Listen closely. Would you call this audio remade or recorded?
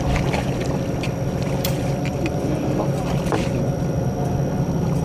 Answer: remade